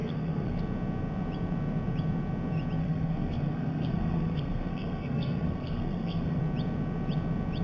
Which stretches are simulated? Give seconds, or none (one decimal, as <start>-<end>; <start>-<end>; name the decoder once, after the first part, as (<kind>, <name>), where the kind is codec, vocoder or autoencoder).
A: 0.0-0.6 (codec, SNAC); 2.8-6.4